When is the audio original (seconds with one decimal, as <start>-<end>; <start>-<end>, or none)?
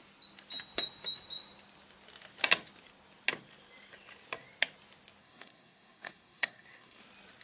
0.0-5.2; 7.0-7.4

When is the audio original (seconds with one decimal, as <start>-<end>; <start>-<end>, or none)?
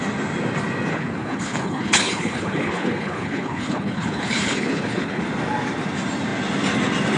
0.0-0.9; 5.2-7.2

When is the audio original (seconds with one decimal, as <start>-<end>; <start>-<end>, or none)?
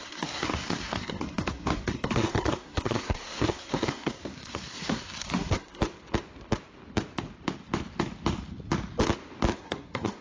5.8-9.5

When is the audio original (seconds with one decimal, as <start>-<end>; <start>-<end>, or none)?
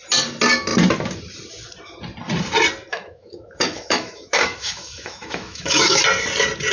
0.0-2.9; 6.0-6.7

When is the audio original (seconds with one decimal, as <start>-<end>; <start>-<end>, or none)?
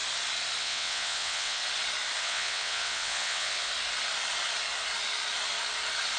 0.0-0.6; 1.6-2.2; 3.7-6.2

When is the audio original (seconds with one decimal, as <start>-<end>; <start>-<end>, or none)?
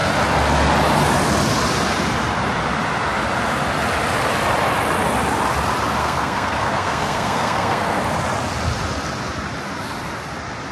0.0-6.0; 8.0-10.7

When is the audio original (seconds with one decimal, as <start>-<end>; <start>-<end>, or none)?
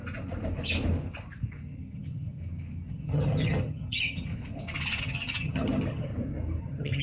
0.0-1.8; 2.4-2.9; 4.3-5.0; 6.1-6.6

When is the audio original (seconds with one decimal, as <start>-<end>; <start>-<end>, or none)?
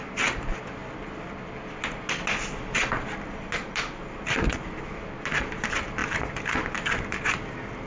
0.0-7.9